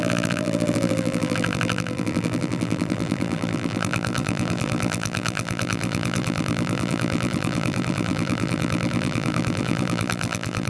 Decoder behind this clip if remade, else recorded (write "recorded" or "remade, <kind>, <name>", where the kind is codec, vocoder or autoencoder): remade, vocoder, BigVGAN v2